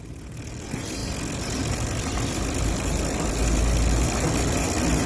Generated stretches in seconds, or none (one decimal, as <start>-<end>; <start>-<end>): none